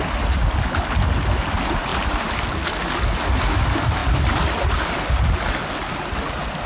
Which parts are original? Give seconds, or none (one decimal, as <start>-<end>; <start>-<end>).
0.0-6.7